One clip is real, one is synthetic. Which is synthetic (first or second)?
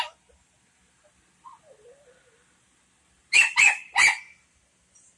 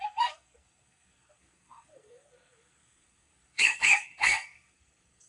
second